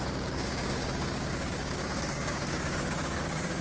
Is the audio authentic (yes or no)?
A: no